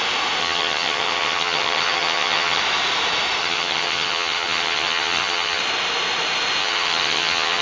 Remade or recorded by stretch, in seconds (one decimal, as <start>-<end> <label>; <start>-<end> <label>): 0.0-0.4 recorded; 0.4-2.6 remade; 2.6-3.4 recorded; 3.4-5.6 remade; 5.6-6.6 recorded; 6.6-7.6 remade